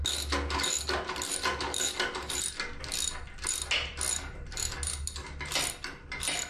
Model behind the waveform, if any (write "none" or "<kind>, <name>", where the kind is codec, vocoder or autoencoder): none